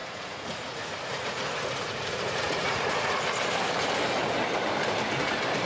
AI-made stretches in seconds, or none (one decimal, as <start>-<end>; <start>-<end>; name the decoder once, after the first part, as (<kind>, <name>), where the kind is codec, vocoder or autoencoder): 0.0-3.4 (vocoder, Vocos)